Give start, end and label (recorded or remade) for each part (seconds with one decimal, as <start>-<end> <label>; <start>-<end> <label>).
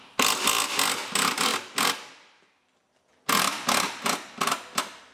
0.0-5.1 recorded